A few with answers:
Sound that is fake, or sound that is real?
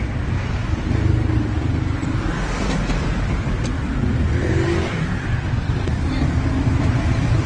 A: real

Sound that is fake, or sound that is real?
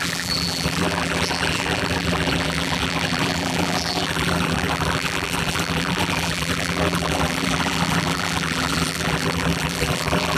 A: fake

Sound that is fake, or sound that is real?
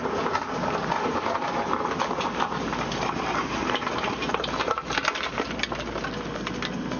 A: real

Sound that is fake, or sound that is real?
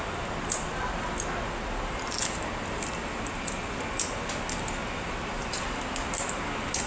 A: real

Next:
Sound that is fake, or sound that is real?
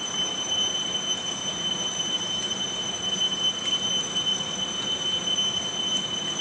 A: real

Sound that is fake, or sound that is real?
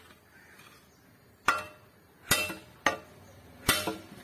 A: real